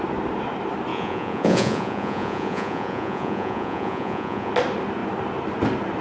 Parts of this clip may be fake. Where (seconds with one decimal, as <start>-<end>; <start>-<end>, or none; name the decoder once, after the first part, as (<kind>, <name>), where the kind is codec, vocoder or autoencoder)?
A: 0.9-4.5 (vocoder, Vocos)